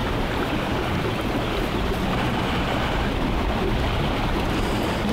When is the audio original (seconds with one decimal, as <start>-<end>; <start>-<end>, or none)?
0.0-5.1